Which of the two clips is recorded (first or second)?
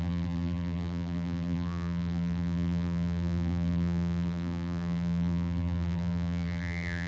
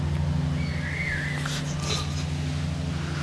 second